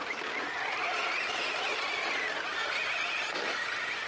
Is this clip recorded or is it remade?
recorded